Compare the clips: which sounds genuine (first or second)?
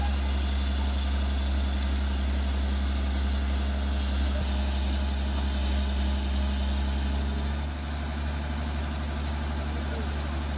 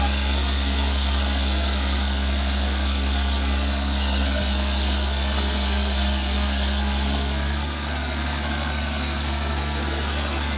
first